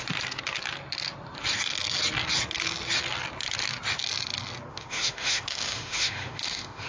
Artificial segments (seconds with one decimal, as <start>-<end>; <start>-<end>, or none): 4.7-6.9